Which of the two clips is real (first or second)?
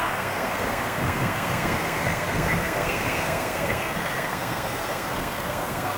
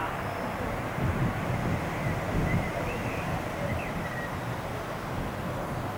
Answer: second